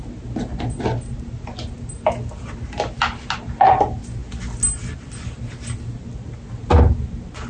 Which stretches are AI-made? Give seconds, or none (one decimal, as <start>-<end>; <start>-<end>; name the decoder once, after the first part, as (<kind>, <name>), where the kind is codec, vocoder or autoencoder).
none